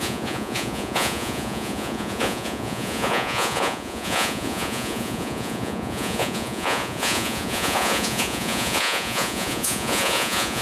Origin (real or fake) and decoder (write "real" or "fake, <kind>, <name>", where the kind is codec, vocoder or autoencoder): fake, vocoder, Vocos